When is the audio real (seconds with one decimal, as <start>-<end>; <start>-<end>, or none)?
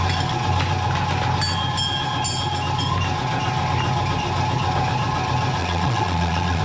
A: 0.0-5.6